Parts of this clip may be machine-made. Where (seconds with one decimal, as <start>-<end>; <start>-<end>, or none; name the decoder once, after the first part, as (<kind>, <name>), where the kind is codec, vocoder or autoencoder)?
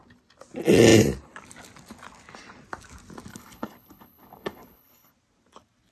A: 3.3-5.1 (codec, HILCodec)